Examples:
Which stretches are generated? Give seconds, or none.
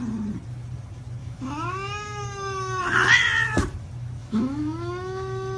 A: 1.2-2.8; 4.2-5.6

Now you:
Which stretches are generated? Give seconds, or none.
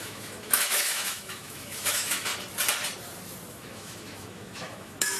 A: 0.0-2.3; 3.5-5.2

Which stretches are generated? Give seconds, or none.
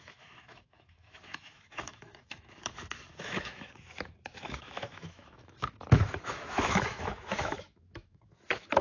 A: 0.0-8.8